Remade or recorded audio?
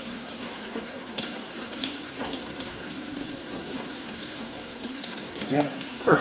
remade